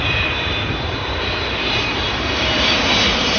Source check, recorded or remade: remade